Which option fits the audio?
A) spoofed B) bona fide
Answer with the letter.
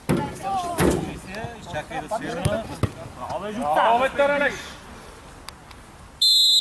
B